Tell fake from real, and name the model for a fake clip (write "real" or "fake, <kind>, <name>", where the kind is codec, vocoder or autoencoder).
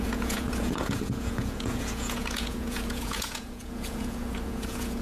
fake, vocoder, Vocos